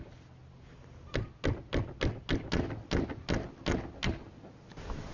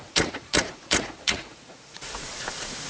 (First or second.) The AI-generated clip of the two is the second